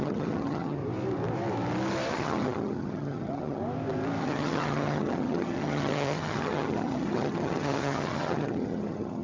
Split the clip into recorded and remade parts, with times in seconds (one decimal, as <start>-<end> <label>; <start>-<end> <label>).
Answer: 0.0-0.8 remade; 0.8-2.1 recorded; 2.1-3.6 remade; 3.6-4.2 recorded; 4.2-9.2 remade